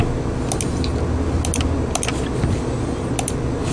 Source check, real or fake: real